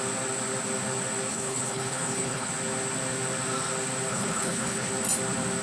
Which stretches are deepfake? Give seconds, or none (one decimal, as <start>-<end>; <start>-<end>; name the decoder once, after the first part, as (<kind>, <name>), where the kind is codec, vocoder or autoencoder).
1.3-2.5 (codec, HILCodec); 4.1-4.9